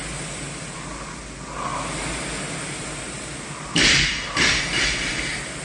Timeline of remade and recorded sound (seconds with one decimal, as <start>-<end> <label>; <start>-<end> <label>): 0.0-5.6 recorded